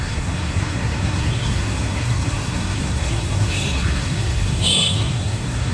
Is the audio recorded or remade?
remade